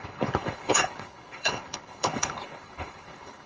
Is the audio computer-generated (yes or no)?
yes